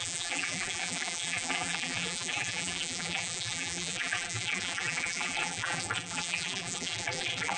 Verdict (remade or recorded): remade